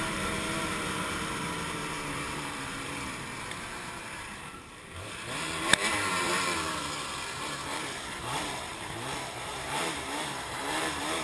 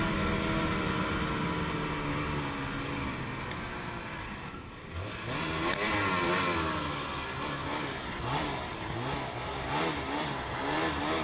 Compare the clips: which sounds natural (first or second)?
second